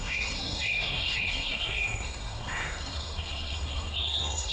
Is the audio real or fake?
fake